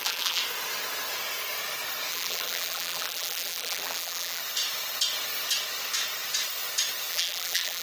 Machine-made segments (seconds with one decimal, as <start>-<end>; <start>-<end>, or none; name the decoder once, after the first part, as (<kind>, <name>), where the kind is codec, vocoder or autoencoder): 0.0-0.4 (vocoder, BigVGAN v2); 2.1-4.4; 7.1-7.8